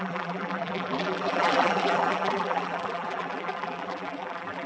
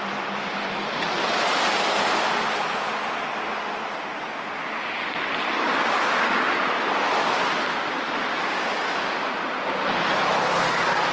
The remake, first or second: first